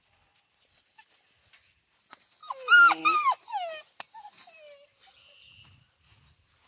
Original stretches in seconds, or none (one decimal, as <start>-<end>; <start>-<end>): 0.0-6.7